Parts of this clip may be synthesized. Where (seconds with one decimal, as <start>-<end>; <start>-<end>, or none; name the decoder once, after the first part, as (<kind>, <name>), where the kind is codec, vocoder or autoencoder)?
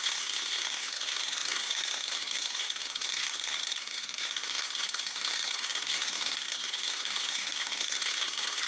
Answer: 0.0-8.7 (codec, SNAC)